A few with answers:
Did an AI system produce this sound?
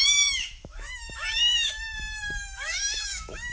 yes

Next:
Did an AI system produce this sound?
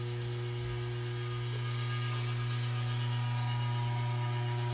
no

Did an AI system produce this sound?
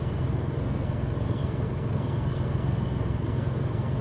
yes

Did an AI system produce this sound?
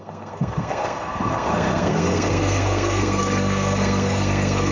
yes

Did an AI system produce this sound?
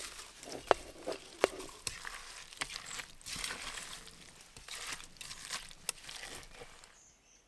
no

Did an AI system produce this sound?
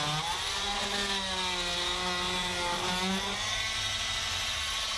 no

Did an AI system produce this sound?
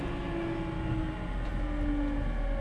no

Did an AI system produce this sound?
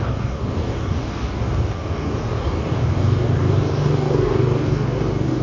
yes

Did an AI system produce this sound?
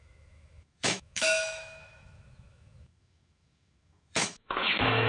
yes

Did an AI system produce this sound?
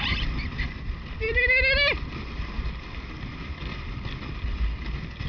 no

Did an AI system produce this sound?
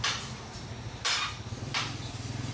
yes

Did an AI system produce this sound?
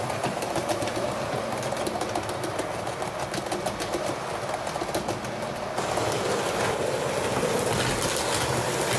no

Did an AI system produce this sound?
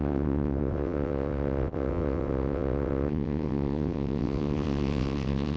yes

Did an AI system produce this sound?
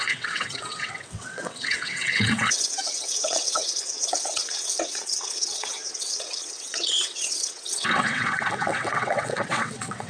yes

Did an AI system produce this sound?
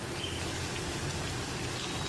no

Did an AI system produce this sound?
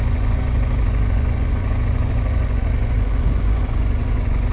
yes